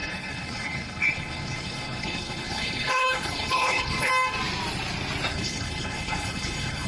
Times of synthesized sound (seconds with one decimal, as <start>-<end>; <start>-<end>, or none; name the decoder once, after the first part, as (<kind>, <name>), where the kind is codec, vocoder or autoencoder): 0.0-4.1 (codec, HILCodec); 5.3-6.9